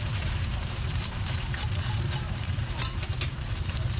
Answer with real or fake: fake